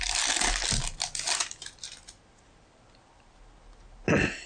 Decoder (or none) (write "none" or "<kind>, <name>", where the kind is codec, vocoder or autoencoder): none